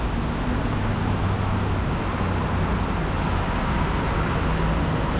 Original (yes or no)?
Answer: yes